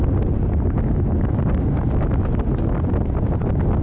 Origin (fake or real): real